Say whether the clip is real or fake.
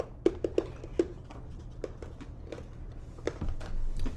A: real